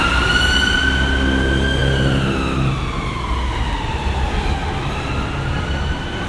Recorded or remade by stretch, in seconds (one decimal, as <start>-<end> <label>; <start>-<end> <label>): 0.0-6.3 recorded